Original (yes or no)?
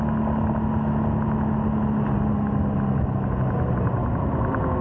yes